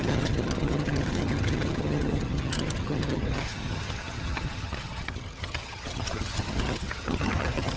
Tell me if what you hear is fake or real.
fake